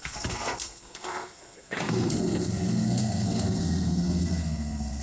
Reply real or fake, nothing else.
fake